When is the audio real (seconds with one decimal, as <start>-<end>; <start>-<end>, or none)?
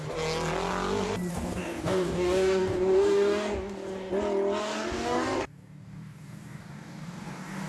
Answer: 0.0-1.3; 4.1-4.6